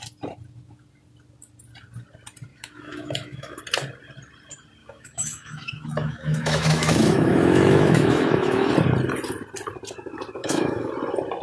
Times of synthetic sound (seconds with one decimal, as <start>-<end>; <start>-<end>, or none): 2.5-3.6; 4.8-8.7; 10.4-10.9